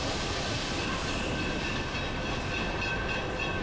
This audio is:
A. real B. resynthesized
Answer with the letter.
A